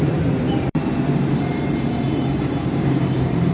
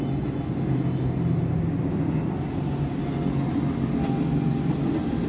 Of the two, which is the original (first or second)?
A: second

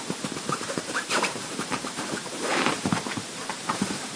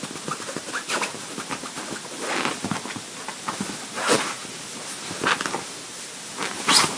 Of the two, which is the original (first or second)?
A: second